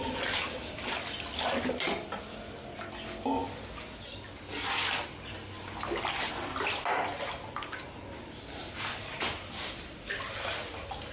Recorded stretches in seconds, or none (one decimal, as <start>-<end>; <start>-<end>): 0.0-11.1